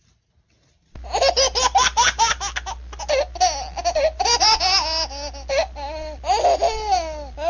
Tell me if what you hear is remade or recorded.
recorded